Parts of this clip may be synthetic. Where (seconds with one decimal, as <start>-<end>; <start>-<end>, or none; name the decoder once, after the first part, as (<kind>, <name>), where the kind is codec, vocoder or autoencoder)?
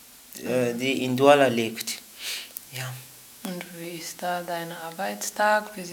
1.9-5.4 (autoencoder, DAC-VAE)